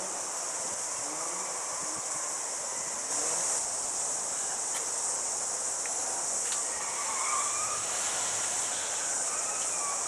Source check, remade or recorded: recorded